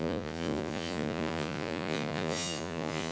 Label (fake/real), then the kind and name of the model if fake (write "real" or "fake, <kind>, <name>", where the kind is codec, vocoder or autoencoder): fake, vocoder, Vocos